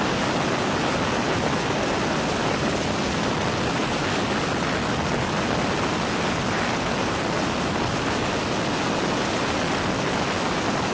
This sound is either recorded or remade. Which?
recorded